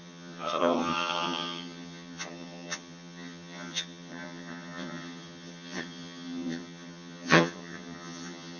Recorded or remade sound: remade